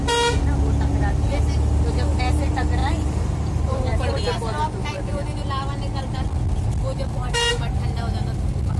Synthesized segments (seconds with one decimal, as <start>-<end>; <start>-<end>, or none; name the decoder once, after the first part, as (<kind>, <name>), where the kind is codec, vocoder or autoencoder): 2.8-4.1 (vocoder, BigVGAN v2)